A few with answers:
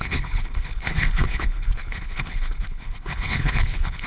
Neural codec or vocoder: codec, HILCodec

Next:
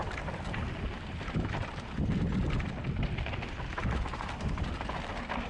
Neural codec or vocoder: none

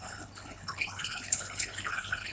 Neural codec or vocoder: codec, HILCodec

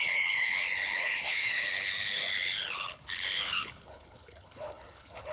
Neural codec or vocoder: codec, HILCodec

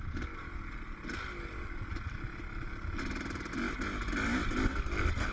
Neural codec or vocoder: none